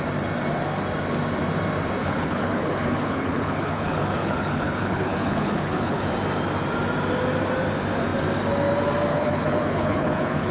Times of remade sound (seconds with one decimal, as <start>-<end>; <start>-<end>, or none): 2.0-6.1; 9.1-10.5